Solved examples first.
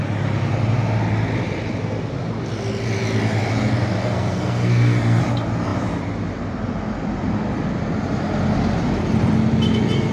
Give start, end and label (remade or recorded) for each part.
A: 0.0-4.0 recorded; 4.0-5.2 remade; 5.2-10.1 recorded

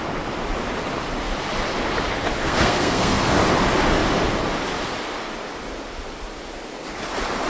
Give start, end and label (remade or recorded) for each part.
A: 0.0-2.4 recorded; 2.4-3.3 remade; 3.3-7.5 recorded

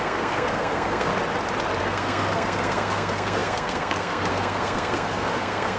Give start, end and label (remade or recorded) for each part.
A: 0.0-1.1 remade; 1.1-1.8 recorded; 1.8-5.8 remade

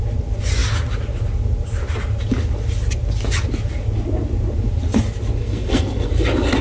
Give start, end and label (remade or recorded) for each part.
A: 0.0-5.4 recorded; 5.4-6.1 remade; 6.1-6.6 recorded

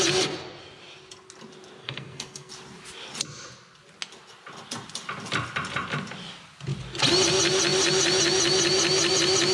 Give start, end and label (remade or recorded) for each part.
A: 0.0-1.8 recorded; 1.8-2.5 remade; 2.5-9.5 recorded

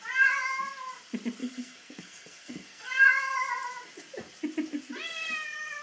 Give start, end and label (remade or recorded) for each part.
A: 0.0-1.4 recorded; 1.4-2.9 remade; 2.9-5.8 recorded

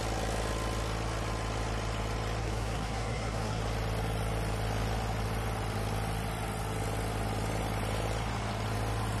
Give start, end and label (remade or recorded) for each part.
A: 0.0-2.4 recorded; 2.4-3.6 remade; 3.6-9.2 recorded